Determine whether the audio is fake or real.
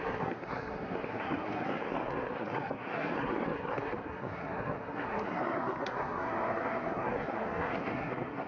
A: fake